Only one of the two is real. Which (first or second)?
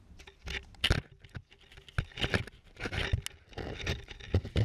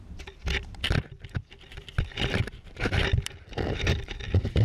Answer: first